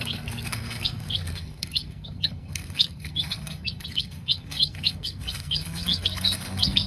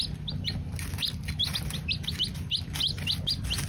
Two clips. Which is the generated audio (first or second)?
first